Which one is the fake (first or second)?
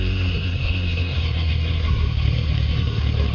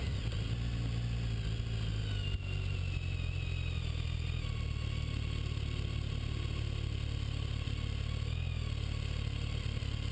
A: first